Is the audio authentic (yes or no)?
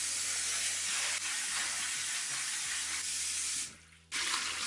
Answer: yes